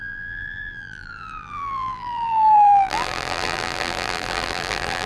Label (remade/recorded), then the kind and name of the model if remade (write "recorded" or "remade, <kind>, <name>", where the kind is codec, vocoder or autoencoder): remade, vocoder, BigVGAN v2